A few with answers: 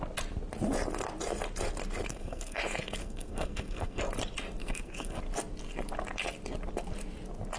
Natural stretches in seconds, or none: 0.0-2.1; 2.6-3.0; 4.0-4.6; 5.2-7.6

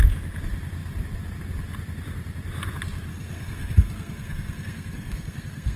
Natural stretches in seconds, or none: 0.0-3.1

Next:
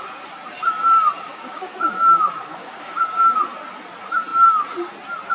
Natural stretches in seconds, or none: 0.0-1.3; 3.4-5.3